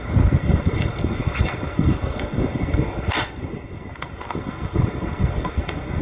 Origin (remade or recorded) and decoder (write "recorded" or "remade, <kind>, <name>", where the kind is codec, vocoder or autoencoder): remade, codec, SNAC